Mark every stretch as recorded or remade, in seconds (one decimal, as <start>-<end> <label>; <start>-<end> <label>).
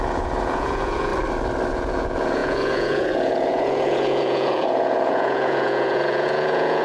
0.0-1.1 remade; 1.1-1.7 recorded; 1.7-6.8 remade